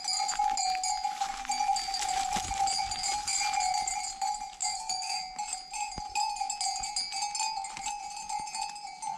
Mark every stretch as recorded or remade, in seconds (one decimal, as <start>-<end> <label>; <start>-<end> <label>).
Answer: 0.0-4.6 recorded; 4.6-5.2 remade; 5.2-9.2 recorded